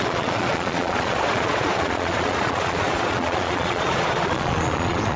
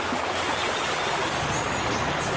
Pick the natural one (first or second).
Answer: second